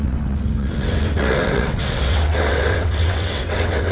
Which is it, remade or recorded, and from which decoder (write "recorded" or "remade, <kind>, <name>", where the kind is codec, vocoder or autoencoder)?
remade, vocoder, WaveNeXt